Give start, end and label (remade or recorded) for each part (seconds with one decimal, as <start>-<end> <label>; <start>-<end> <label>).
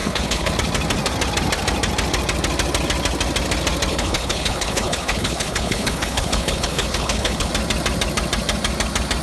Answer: 0.0-0.5 remade; 0.5-3.9 recorded; 3.9-7.5 remade; 7.5-9.2 recorded